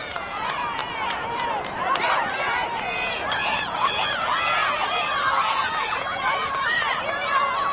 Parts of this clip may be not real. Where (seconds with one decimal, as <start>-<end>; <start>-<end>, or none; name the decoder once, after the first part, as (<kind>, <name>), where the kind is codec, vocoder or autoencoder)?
0.0-7.7 (vocoder, Vocos)